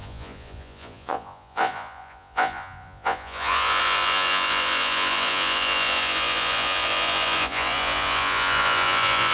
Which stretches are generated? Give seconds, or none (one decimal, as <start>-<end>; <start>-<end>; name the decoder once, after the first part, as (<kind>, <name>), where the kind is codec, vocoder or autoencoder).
0.0-9.3 (vocoder, Vocos)